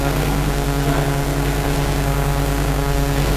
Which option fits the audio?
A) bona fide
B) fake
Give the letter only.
B